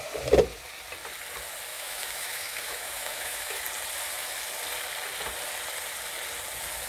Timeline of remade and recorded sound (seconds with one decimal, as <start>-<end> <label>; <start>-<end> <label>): 0.0-1.7 recorded; 1.7-3.6 remade; 3.6-6.9 recorded